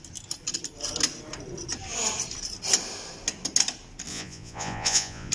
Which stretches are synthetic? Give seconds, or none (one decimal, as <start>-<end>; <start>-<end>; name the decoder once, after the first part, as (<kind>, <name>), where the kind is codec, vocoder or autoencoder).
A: 4.1-5.3 (vocoder, Vocos)